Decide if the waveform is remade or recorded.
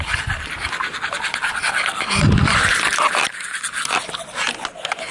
recorded